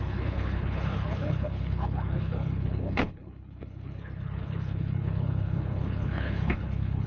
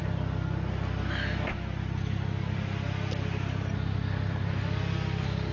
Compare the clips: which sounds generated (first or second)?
first